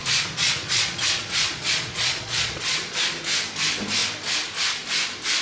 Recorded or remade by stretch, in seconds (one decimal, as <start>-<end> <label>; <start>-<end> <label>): 0.0-3.0 remade; 3.0-5.4 recorded